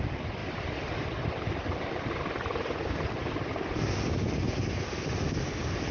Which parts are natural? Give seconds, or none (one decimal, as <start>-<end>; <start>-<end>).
0.0-5.9